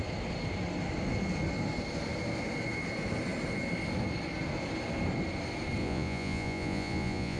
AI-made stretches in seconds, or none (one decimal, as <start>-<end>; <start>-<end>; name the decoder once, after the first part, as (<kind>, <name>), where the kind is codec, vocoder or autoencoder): 5.8-7.4 (vocoder, Vocos)